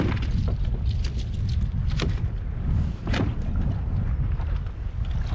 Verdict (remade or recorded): recorded